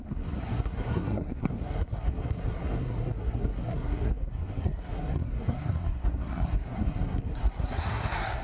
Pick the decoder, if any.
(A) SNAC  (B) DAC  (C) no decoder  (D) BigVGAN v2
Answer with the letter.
A